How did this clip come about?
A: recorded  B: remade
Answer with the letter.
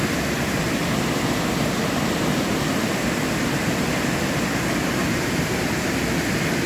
A